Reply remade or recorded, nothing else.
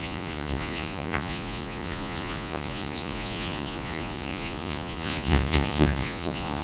remade